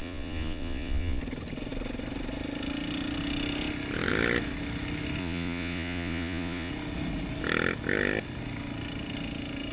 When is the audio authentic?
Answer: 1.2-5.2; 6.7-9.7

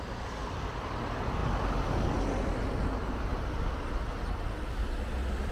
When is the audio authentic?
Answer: 0.0-5.5